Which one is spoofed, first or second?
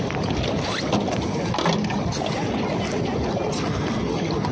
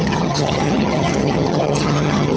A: second